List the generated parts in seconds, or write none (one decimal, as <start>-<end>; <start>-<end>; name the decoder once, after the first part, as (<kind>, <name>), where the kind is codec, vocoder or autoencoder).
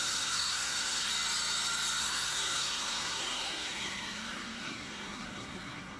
0.0-1.1 (codec, SNAC); 2.0-6.0